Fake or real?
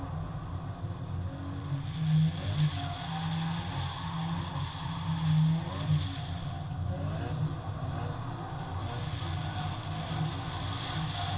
real